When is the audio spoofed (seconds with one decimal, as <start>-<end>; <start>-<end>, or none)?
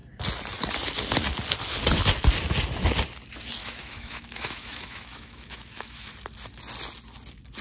3.6-6.1